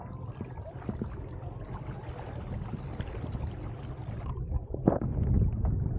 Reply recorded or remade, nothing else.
recorded